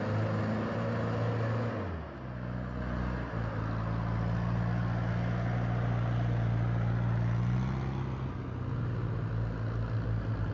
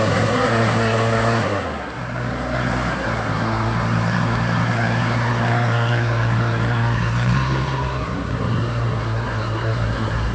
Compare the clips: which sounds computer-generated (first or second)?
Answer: second